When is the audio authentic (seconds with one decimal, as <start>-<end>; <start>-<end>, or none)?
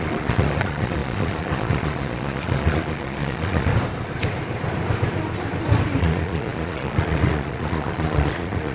3.7-6.0